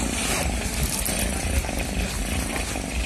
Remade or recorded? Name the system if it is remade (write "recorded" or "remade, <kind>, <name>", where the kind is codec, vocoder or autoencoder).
recorded